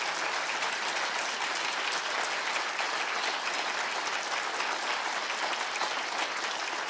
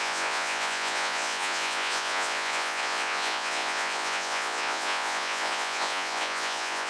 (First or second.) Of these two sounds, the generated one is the second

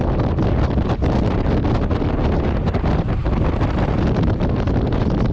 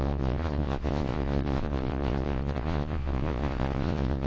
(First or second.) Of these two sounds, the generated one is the second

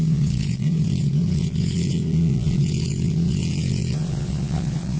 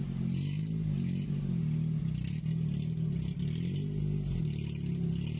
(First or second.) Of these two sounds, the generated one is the first